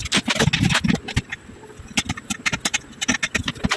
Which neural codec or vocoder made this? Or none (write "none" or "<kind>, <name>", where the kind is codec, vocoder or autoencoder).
none